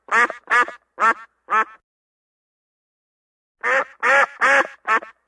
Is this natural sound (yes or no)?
yes